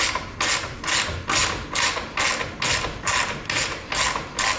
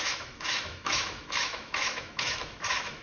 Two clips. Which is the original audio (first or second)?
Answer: first